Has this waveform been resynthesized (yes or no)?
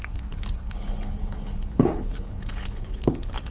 yes